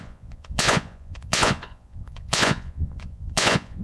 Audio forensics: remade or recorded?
remade